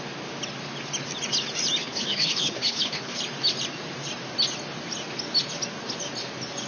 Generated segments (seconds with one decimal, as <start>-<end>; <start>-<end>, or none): 1.8-3.2

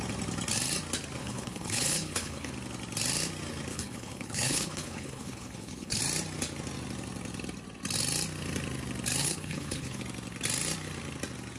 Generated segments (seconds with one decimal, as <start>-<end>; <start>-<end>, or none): 1.2-2.5; 3.7-6.0; 9.2-10.0

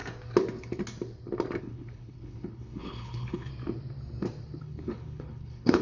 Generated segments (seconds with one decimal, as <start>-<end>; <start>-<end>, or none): 1.6-3.5; 4.6-5.8

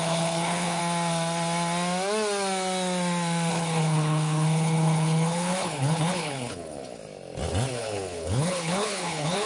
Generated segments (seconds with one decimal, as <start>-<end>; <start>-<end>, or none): 0.0-0.8; 3.5-7.0; 7.7-9.5

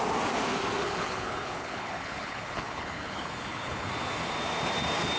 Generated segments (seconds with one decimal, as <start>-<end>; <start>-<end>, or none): 0.8-3.9

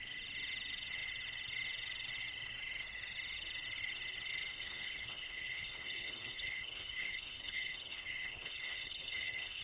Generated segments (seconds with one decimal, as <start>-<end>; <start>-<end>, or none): 4.5-9.6

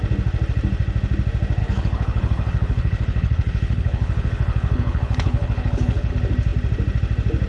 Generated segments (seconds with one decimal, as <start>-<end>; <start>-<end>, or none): 1.6-6.1

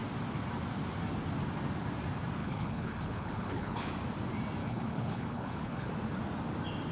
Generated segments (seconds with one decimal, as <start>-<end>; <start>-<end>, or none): 2.4-3.9; 4.6-5.9